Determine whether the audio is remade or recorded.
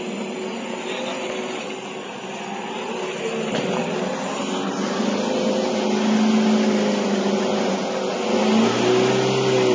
recorded